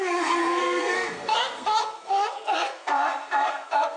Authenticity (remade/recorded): remade